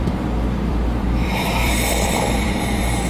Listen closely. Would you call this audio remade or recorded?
remade